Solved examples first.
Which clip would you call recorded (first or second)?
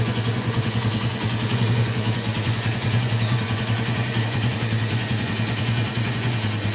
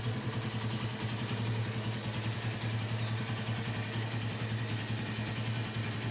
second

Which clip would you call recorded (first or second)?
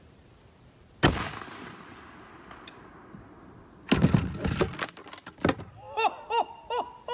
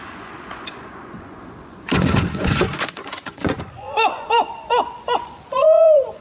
first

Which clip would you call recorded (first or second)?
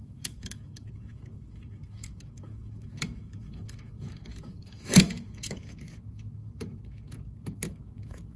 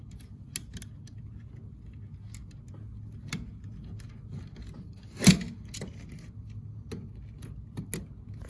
second